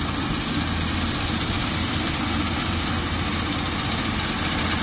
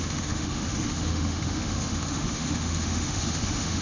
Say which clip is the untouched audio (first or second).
first